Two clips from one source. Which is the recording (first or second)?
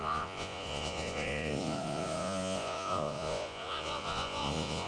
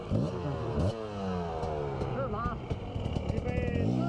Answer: second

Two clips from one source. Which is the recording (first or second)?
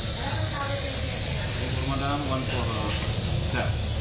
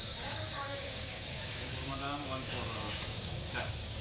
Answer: first